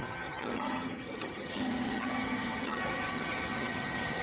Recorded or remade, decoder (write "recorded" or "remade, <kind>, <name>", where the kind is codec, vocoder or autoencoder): remade, vocoder, HiFi-GAN